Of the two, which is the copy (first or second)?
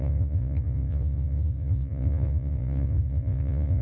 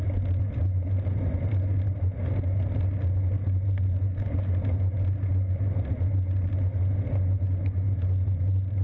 first